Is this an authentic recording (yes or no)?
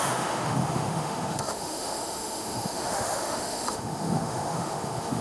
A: no